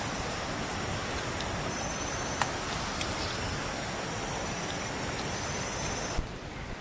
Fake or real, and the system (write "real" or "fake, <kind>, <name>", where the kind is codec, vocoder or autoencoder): real